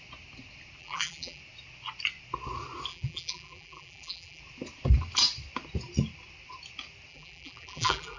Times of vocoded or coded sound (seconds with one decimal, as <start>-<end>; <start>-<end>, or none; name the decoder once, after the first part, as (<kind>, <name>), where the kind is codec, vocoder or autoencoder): 0.8-1.4 (vocoder, BigVGAN v2); 2.9-4.4; 7.1-8.2